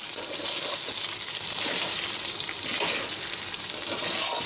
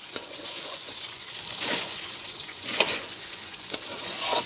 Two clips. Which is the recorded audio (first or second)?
first